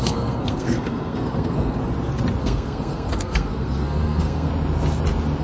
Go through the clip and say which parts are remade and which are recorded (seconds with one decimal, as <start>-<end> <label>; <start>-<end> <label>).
0.0-1.8 remade; 1.8-2.4 recorded; 2.4-4.5 remade; 4.5-5.4 recorded